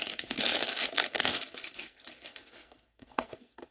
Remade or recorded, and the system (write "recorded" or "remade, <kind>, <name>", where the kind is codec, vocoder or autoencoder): remade, codec, SNAC